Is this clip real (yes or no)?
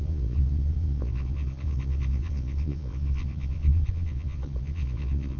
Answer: no